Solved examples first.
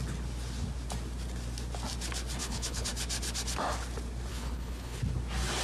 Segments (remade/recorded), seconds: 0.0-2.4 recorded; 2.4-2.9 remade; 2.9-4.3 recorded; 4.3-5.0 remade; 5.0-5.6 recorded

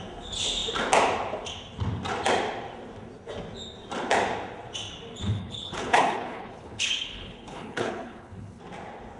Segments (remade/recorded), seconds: 0.0-5.2 recorded; 5.2-8.6 remade; 8.6-9.2 recorded